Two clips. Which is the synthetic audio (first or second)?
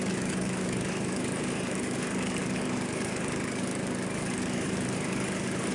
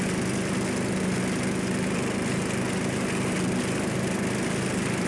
first